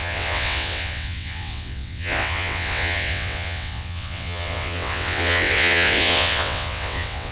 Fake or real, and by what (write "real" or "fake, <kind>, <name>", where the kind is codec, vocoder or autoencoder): fake, vocoder, WaveNeXt